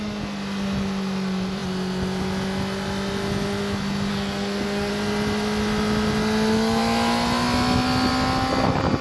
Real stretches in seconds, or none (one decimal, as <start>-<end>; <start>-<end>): 0.0-4.1; 4.9-9.0